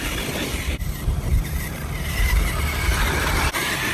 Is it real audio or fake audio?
real